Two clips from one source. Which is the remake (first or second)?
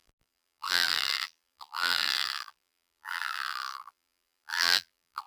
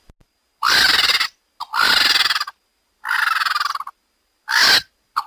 first